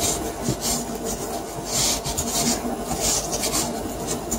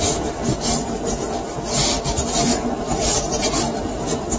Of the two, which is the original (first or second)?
first